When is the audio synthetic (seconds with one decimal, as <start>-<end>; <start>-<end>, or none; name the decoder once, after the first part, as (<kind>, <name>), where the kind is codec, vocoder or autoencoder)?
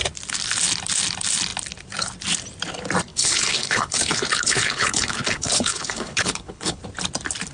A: 3.1-6.8 (codec, HILCodec)